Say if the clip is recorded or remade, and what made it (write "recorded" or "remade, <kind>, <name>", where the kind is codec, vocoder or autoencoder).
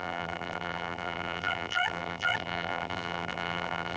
remade, vocoder, BigVGAN v2